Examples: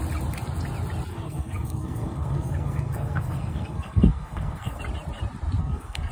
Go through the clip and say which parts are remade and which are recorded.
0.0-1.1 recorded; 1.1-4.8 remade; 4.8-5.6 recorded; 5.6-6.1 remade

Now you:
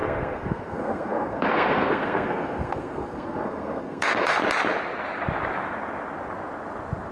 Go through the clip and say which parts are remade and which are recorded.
0.0-4.4 remade; 4.4-7.1 recorded

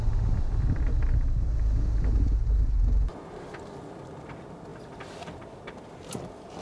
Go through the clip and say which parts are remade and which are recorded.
0.0-6.6 recorded

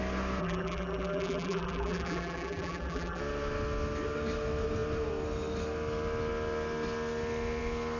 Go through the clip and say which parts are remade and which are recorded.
0.0-0.4 recorded; 0.4-3.2 remade; 3.2-8.0 recorded

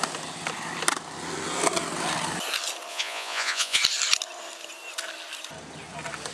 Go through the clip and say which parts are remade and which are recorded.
0.0-2.9 recorded; 2.9-3.8 remade; 3.8-6.3 recorded

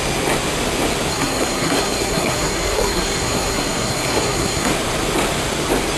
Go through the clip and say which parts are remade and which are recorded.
0.0-1.1 recorded; 1.1-4.7 remade; 4.7-6.0 recorded